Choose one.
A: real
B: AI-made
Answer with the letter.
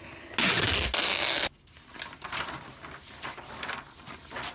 A